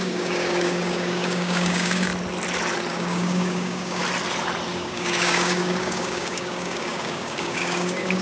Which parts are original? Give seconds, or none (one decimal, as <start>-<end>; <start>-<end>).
2.1-2.9; 4.0-4.7